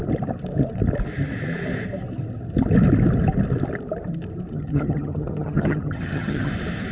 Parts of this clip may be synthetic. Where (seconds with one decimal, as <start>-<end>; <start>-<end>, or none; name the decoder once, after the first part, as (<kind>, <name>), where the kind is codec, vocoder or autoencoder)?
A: 4.5-6.5 (vocoder, HiFi-GAN)